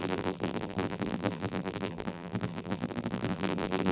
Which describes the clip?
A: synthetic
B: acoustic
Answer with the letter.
A